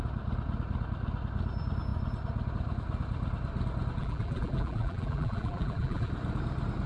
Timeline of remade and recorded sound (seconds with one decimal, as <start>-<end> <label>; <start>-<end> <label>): 0.0-4.0 recorded; 4.0-6.1 remade; 6.1-6.9 recorded